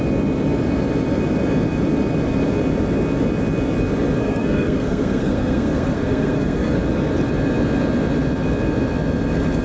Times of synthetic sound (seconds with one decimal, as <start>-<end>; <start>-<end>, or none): 4.2-6.8